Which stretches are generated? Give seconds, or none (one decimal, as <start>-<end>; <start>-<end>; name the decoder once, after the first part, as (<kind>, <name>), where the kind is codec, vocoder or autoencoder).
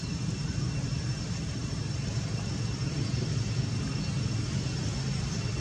0.0-2.4 (vocoder, BigVGAN v2)